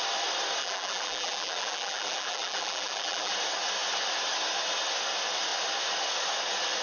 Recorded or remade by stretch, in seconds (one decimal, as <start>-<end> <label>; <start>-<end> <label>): 0.0-0.6 recorded; 0.6-3.3 remade; 3.3-6.8 recorded